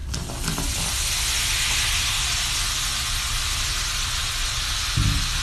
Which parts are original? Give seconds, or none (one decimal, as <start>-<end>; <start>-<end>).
0.0-5.4

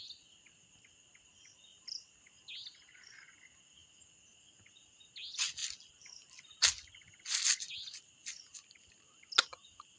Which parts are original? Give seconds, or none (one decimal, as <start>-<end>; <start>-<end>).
0.0-1.7; 2.3-10.0